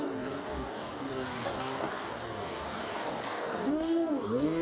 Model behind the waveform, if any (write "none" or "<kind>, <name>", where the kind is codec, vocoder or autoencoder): codec, DAC